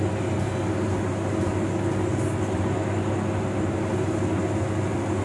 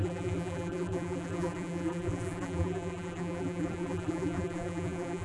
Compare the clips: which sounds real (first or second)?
first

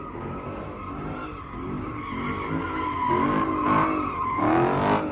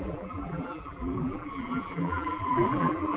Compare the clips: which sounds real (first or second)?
first